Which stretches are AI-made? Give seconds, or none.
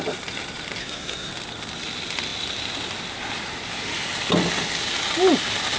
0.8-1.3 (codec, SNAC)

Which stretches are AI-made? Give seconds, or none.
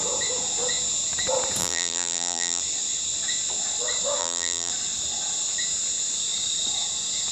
1.6-2.6 (vocoder, BigVGAN v2); 4.2-4.7